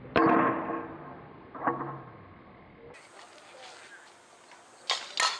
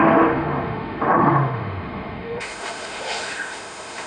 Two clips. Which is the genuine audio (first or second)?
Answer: first